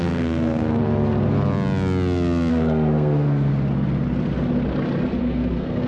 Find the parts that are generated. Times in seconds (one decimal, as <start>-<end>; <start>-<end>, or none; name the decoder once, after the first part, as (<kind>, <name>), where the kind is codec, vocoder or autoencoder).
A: 0.0-0.8 (codec, SNAC); 2.5-3.5; 5.2-5.9